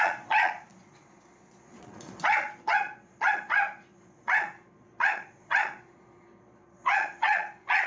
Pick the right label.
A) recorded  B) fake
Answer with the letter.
B